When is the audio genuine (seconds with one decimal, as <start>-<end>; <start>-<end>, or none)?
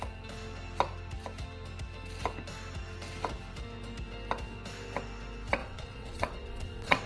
0.0-5.6